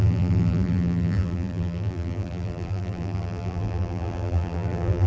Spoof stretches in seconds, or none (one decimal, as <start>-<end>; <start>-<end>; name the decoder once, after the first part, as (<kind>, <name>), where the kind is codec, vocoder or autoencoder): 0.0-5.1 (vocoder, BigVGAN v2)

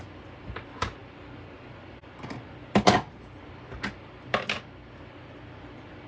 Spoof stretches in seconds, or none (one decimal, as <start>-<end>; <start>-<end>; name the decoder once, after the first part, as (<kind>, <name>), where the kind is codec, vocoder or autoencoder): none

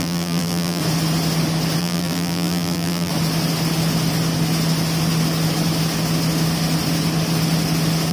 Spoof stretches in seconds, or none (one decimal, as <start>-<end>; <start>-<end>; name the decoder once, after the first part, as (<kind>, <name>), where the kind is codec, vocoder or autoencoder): 0.0-0.8 (vocoder, BigVGAN v2); 1.8-3.1